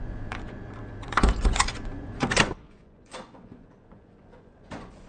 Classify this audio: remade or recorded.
remade